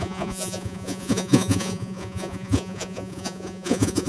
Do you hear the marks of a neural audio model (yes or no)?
yes